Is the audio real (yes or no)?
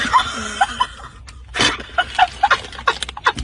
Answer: yes